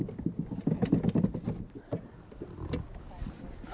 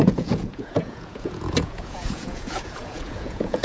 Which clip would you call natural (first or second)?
first